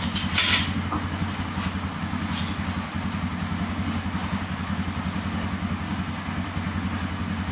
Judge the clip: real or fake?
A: real